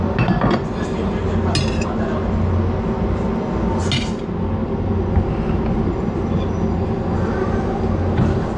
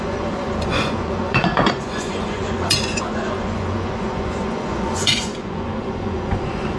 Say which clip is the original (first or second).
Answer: first